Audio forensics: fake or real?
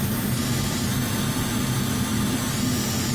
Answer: real